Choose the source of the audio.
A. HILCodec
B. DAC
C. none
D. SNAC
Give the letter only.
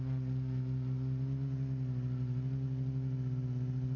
C